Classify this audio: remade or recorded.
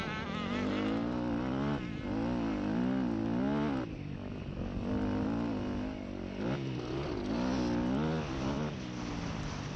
recorded